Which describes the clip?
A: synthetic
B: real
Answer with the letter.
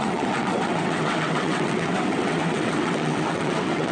A